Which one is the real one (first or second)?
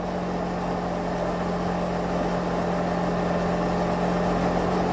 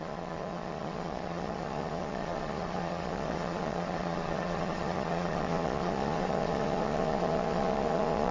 first